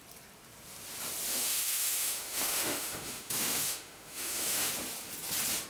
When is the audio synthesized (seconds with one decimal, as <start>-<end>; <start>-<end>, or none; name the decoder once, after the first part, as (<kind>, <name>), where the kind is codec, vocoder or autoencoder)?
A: 1.3-4.7 (autoencoder, DAC-VAE)